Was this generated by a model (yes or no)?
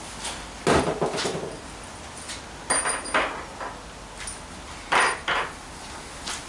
no